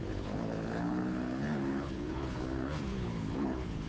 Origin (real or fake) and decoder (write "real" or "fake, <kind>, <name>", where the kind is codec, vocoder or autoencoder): fake, codec, HILCodec